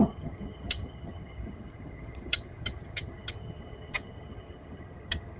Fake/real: fake